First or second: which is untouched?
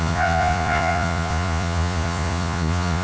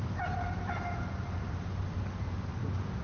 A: second